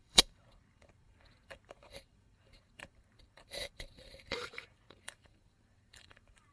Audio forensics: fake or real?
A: fake